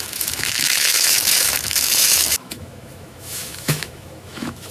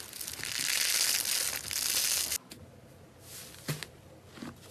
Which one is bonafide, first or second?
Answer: second